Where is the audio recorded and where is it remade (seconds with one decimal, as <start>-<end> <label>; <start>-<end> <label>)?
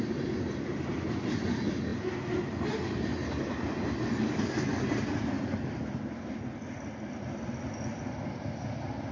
0.0-9.1 recorded